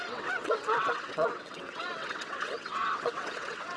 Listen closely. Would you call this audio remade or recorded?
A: remade